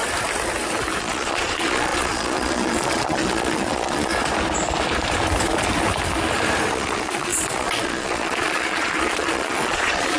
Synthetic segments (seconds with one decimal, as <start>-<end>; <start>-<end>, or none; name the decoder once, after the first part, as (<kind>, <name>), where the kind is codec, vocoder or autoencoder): 1.0-4.1 (vocoder, Vocos); 6.7-10.2